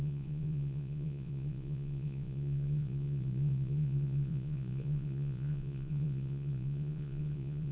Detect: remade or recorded remade